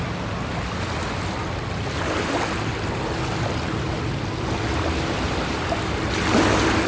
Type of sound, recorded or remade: recorded